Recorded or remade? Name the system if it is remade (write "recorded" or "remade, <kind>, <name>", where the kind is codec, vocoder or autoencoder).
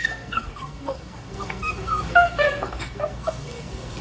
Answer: remade, codec, SNAC